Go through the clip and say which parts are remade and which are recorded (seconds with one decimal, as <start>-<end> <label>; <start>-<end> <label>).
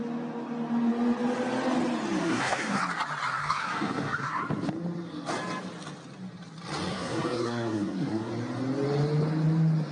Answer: 0.0-2.2 recorded; 2.2-2.8 remade; 2.8-3.4 recorded; 3.4-4.4 remade; 4.4-6.9 recorded; 6.9-8.3 remade; 8.3-9.9 recorded